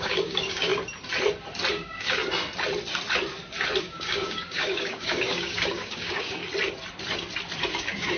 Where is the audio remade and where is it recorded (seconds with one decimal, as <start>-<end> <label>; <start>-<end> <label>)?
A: 0.0-0.7 remade; 0.7-1.7 recorded; 1.7-2.2 remade; 2.2-3.8 recorded; 3.8-6.4 remade; 6.4-7.7 recorded; 7.7-8.2 remade